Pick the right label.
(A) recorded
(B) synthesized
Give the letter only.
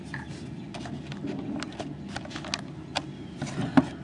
A